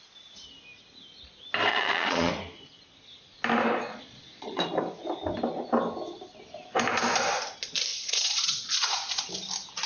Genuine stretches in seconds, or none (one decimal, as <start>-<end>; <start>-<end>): 0.0-1.7; 2.3-3.9; 4.6-7.9; 9.3-9.9